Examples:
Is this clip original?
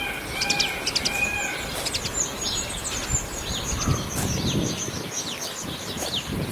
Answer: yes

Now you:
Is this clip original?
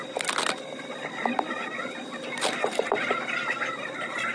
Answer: yes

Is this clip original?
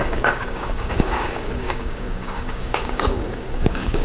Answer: no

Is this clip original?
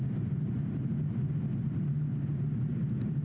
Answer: yes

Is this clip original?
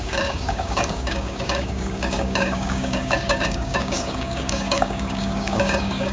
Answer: no